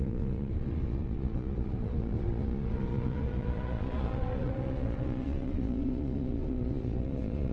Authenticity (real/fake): fake